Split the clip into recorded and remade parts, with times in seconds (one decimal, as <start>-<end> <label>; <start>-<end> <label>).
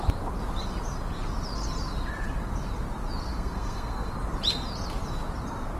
0.0-3.3 recorded; 3.3-4.1 remade; 4.1-5.8 recorded